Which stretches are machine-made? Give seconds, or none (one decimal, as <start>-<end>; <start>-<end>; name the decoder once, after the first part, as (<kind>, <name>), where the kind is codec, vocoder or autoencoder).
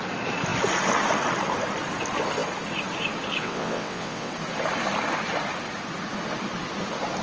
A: 3.4-4.3 (vocoder, WaveNeXt)